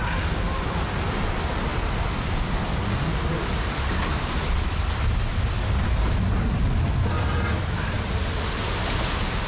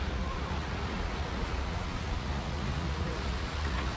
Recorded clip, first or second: first